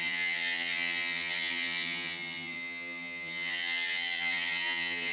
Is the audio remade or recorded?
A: remade